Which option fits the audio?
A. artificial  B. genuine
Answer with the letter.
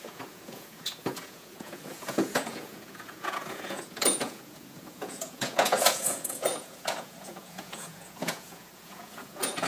A